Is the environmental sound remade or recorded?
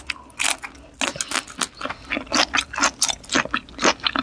recorded